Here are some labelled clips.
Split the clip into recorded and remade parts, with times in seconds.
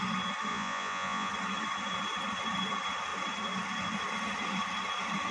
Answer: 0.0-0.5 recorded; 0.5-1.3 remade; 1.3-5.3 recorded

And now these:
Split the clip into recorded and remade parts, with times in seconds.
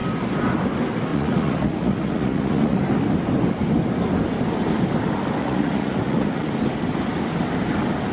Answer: 0.0-1.1 recorded; 1.1-2.8 remade; 2.8-5.4 recorded; 5.4-6.5 remade; 6.5-8.1 recorded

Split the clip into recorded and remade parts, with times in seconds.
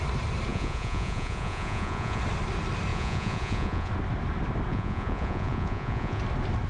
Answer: 0.0-0.5 recorded; 0.5-2.2 remade; 2.2-2.9 recorded; 2.9-3.9 remade; 3.9-4.7 recorded; 4.7-6.2 remade; 6.2-6.7 recorded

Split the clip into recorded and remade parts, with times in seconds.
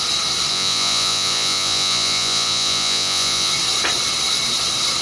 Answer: 0.0-0.5 recorded; 0.5-3.5 remade; 3.5-5.0 recorded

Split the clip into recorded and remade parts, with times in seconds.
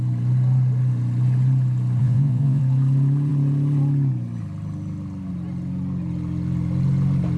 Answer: 0.0-2.0 recorded; 2.0-2.6 remade; 2.6-7.4 recorded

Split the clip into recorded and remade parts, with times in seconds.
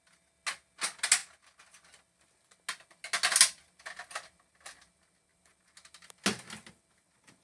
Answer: 0.0-7.4 recorded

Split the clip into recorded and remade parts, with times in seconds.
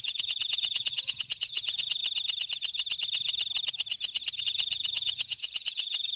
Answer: 0.0-2.0 remade; 2.0-4.4 recorded; 4.4-6.2 remade